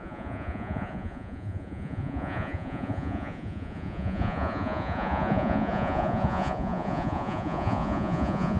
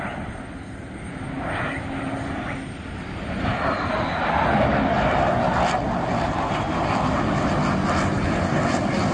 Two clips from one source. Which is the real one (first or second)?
second